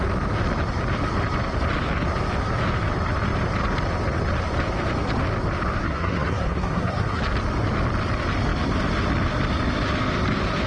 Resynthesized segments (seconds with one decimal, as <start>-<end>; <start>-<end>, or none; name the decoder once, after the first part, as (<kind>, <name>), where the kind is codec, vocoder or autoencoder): 5.8-7.2 (codec, SNAC)